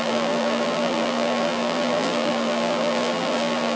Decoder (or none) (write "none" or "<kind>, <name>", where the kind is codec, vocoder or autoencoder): vocoder, BigVGAN v2